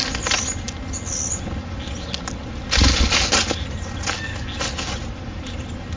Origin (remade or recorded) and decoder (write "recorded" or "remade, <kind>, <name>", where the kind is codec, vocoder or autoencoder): recorded